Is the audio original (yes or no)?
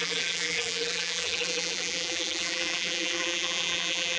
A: no